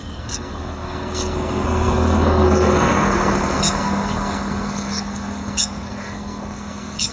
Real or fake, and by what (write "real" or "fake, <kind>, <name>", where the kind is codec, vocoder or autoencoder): fake, codec, SNAC